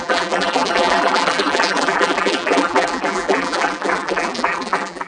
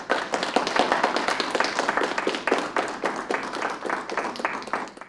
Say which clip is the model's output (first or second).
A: first